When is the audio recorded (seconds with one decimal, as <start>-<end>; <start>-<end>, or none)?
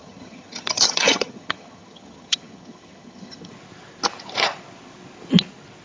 3.5-5.8